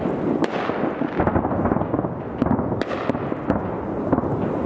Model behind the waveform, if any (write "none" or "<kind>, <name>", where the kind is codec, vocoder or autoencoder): none